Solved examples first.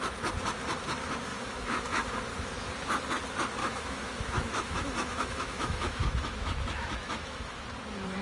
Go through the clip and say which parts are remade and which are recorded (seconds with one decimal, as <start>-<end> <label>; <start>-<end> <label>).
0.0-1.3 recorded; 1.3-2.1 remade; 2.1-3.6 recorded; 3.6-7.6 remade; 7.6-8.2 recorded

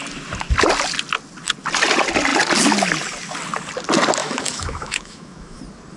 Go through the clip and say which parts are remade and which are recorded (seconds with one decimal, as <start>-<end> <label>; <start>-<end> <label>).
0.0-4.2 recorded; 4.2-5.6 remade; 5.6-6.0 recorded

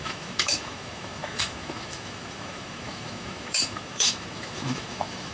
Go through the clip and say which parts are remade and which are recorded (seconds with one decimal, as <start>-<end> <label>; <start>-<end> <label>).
0.0-5.3 remade